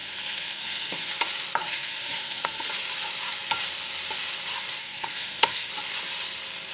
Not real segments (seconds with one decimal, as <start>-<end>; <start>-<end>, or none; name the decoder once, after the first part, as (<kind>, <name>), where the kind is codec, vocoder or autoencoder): 0.0-1.1 (codec, SNAC); 1.6-2.7; 4.8-5.7